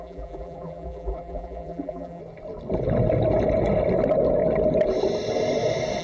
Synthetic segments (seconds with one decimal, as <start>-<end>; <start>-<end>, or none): 0.0-2.2